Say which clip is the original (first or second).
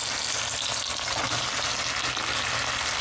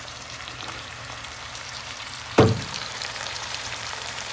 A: first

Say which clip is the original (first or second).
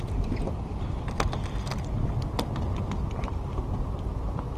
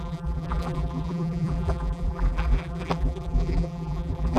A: first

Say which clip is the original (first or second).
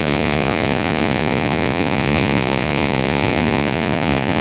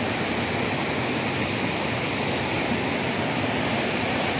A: second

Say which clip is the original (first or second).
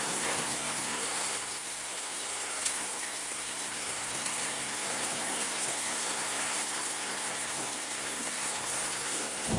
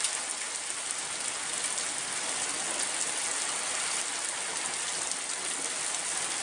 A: second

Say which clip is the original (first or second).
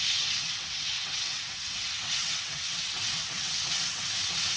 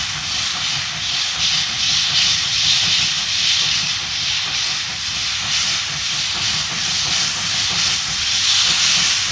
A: second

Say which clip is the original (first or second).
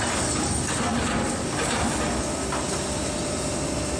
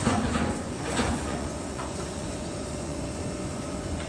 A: first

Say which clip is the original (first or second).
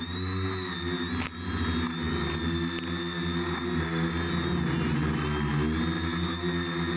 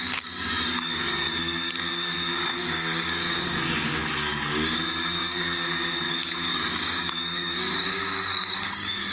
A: first